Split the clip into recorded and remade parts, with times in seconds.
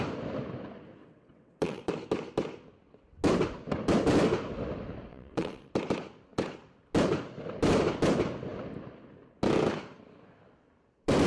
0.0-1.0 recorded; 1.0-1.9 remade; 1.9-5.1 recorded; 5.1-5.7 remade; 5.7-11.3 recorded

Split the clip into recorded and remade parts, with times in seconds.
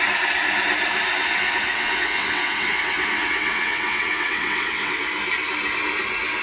0.0-1.2 recorded; 1.2-5.0 remade; 5.0-6.4 recorded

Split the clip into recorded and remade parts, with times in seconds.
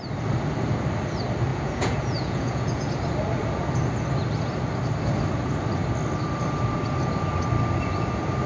0.0-1.5 recorded; 1.5-2.9 remade; 2.9-8.5 recorded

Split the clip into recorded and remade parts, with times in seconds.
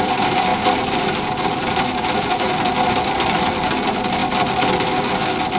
0.0-0.5 remade; 0.5-1.5 recorded; 1.5-4.2 remade; 4.2-5.6 recorded